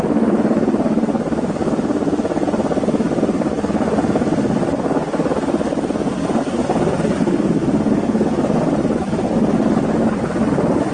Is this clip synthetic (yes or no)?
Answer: no